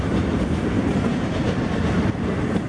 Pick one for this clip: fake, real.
real